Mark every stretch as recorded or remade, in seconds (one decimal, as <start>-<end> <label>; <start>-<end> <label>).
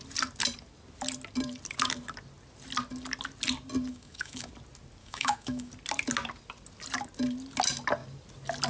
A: 0.0-3.9 recorded; 3.9-4.5 remade; 4.5-5.0 recorded; 5.0-5.7 remade; 5.7-8.7 recorded